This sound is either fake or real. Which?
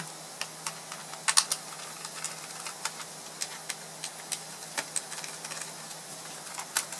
real